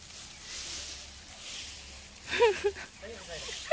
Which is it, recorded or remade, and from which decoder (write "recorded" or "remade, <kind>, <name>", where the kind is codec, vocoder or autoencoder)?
recorded